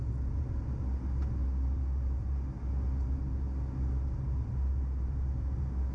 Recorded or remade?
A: recorded